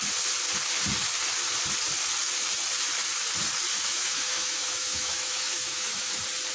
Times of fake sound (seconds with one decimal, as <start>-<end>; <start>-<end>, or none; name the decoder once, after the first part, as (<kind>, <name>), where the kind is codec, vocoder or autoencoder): 3.9-6.1 (autoencoder, DAC-VAE)